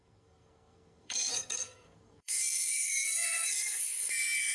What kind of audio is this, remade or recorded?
remade